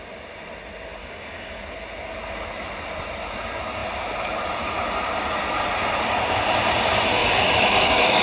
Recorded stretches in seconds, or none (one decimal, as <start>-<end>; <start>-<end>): 0.0-1.0; 1.6-7.2